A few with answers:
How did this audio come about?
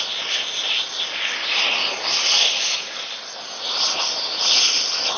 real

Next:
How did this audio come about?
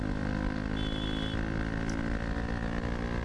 real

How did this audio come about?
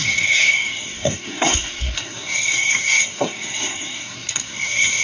fake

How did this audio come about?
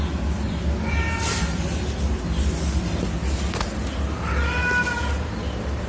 real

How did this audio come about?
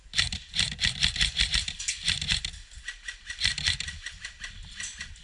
real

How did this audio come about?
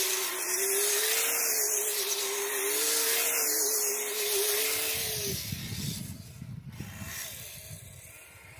real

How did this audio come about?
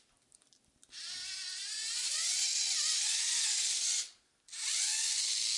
real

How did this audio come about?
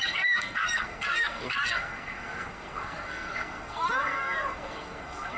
fake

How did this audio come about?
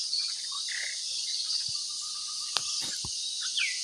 real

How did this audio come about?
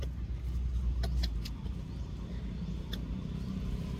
real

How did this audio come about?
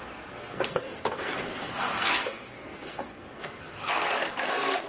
fake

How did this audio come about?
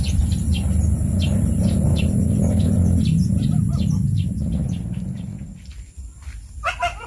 real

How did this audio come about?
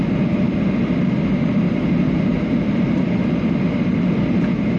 real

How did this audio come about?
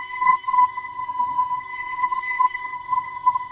fake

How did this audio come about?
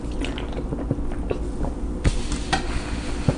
real